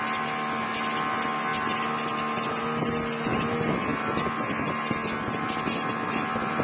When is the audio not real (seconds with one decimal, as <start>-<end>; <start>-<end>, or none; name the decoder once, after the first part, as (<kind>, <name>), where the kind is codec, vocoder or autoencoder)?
none